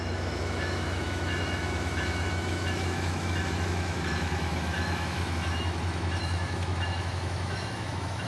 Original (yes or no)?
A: no